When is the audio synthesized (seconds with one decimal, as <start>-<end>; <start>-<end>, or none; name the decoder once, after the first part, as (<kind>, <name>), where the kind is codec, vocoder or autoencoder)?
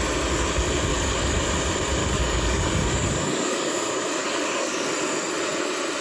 0.9-1.4 (codec, DAC); 2.0-3.7; 4.2-4.9